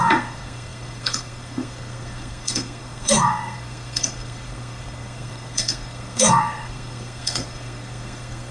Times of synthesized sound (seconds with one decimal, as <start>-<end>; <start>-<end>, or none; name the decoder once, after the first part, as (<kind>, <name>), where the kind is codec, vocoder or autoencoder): 0.0-8.5 (codec, SNAC)